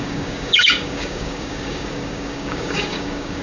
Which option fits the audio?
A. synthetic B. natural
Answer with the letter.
A